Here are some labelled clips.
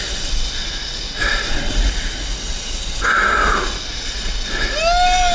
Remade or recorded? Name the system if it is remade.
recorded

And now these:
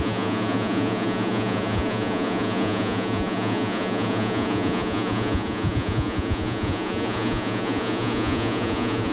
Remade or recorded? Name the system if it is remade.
remade, vocoder, Vocos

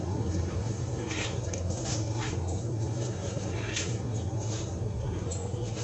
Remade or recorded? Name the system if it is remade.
remade, codec, SNAC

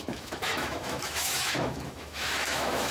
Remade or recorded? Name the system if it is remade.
remade, autoencoder, DAC-VAE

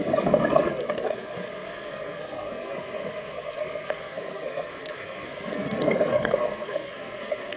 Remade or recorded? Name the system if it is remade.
remade, codec, SNAC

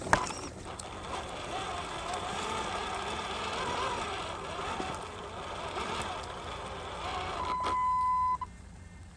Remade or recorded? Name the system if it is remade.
recorded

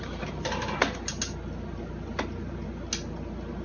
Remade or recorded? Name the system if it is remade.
recorded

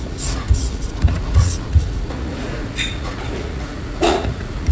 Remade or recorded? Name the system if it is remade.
remade, vocoder, Vocos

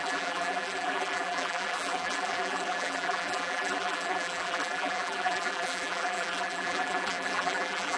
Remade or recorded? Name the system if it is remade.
remade, vocoder, BigVGAN v2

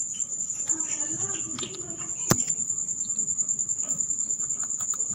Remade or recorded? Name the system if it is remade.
recorded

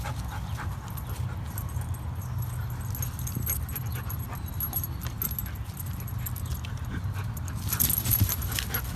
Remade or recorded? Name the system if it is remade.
recorded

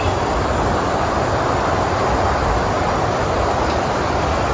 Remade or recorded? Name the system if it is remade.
recorded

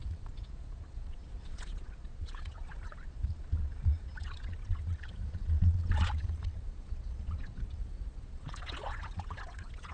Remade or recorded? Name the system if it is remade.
remade, vocoder, Vocos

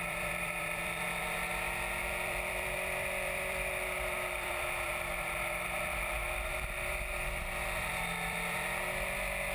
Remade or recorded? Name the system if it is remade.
remade, vocoder, BigVGAN v2